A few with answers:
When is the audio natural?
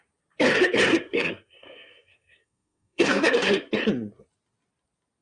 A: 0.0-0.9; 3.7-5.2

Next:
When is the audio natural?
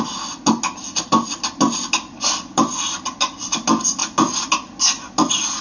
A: 0.0-5.6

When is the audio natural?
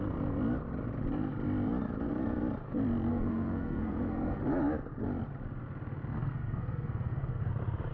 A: 0.0-3.1; 4.4-6.1; 7.5-7.9